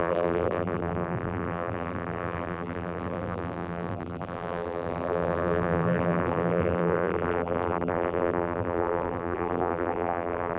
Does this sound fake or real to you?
fake